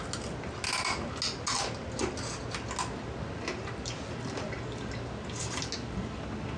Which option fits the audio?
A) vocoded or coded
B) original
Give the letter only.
B